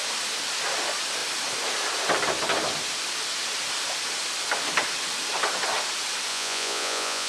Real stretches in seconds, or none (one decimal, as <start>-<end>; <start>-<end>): 0.0-6.3